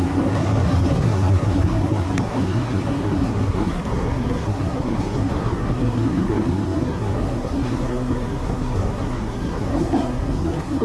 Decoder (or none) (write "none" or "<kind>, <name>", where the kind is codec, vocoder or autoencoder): codec, SNAC